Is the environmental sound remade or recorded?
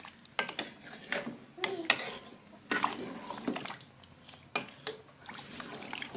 recorded